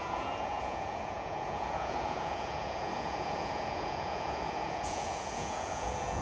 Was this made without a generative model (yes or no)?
no